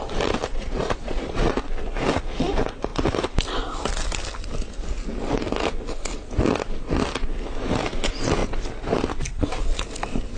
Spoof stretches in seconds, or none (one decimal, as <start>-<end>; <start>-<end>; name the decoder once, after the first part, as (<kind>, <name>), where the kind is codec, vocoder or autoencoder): 0.5-1.5 (vocoder, Vocos)